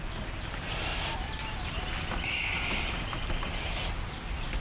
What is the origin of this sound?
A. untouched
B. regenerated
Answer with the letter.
A